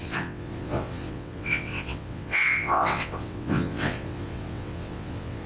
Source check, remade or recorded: remade